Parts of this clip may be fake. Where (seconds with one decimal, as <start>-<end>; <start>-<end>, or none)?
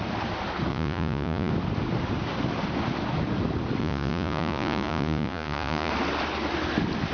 0.7-1.5; 3.8-5.9